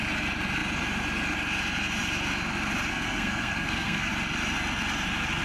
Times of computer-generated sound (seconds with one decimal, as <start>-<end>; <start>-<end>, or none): 2.9-4.1